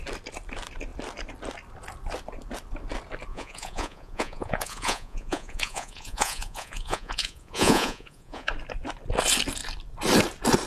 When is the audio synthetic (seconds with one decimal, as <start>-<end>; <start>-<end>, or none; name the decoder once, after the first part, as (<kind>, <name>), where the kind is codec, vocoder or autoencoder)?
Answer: 3.3-8.5 (vocoder, Vocos)